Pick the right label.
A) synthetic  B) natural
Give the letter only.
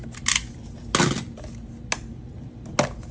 B